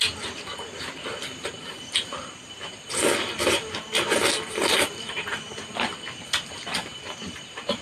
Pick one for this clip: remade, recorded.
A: remade